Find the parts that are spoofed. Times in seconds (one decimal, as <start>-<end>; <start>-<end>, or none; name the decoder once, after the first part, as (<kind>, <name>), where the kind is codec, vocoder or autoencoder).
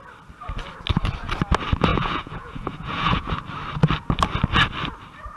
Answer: 1.9-3.3 (vocoder, Vocos)